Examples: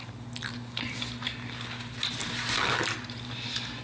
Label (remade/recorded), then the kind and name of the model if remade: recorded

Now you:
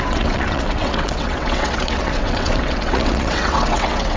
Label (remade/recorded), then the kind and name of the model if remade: remade, vocoder, WaveNeXt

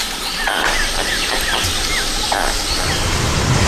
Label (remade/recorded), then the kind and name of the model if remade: recorded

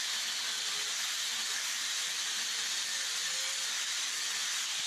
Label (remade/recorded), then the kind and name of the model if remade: recorded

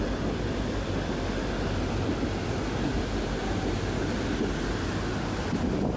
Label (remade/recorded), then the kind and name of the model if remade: recorded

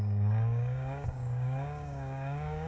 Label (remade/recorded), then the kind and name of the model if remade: remade, codec, DAC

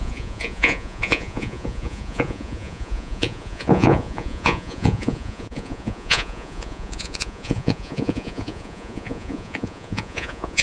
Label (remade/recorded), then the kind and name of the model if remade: remade, vocoder, Vocos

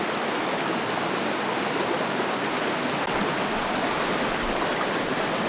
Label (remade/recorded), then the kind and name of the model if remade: recorded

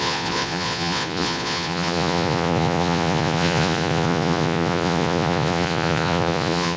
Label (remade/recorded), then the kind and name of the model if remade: remade, vocoder, Vocos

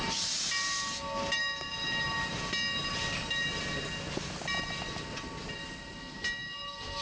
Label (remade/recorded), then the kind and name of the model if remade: recorded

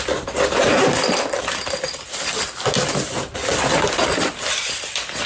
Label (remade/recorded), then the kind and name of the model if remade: recorded